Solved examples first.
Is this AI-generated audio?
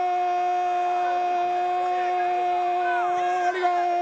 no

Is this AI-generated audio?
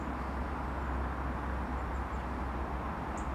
no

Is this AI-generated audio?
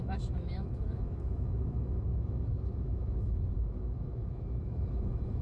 yes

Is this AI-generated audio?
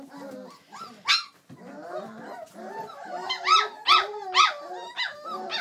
no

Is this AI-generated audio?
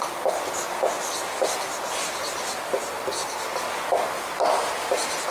no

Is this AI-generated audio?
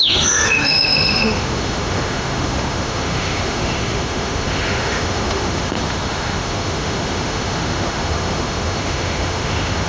yes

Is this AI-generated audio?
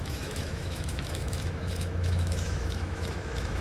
yes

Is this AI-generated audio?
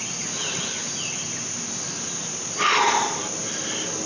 no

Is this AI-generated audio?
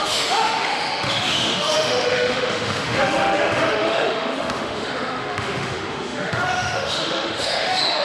yes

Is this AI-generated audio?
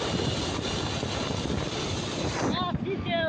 no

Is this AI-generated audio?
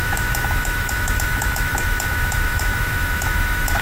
yes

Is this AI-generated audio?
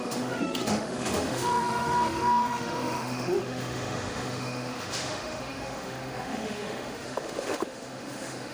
yes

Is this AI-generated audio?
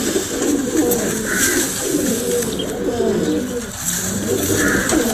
no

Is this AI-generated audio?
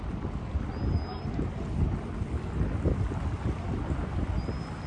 no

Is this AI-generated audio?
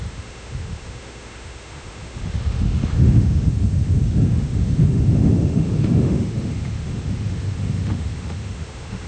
yes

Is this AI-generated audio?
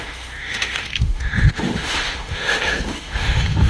yes